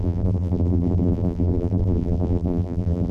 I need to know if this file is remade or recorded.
remade